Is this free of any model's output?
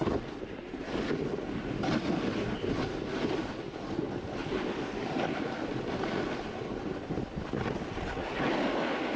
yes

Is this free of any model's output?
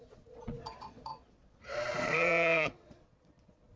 no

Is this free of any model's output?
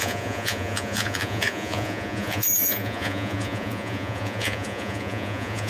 no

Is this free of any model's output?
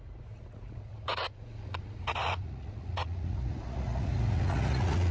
no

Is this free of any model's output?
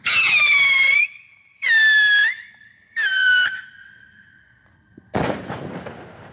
yes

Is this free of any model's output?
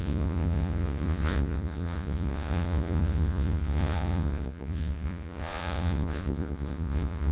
no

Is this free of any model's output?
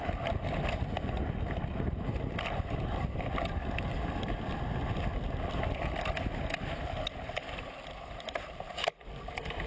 yes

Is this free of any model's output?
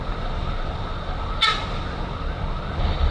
yes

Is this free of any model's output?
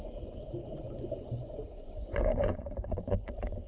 no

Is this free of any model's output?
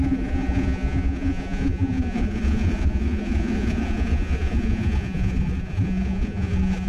no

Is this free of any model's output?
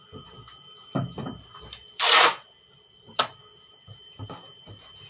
yes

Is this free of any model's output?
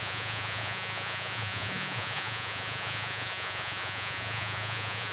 no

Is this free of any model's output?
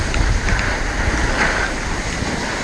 yes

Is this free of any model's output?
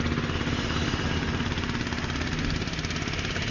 yes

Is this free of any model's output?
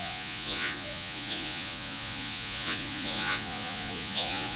no